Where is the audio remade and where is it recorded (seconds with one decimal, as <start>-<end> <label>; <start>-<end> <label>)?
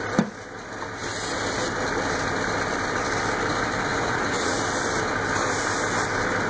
0.0-3.9 recorded; 3.9-4.6 remade; 4.6-6.5 recorded